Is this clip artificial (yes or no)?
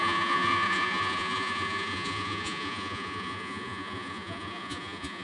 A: yes